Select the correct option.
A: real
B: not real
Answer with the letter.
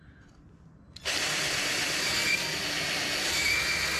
B